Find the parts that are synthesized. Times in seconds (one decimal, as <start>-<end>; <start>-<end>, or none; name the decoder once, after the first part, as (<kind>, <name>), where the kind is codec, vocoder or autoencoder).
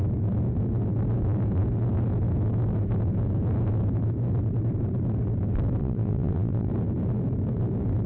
5.8-6.7 (vocoder, Vocos)